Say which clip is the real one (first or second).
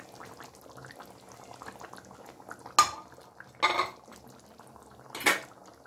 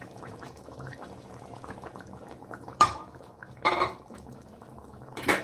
first